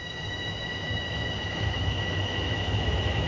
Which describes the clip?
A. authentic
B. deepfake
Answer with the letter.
B